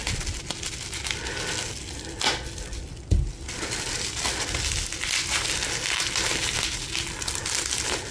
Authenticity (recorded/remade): recorded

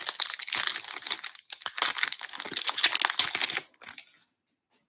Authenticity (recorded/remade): recorded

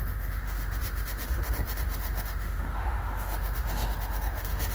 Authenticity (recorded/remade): remade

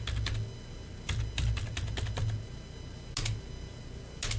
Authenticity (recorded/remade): recorded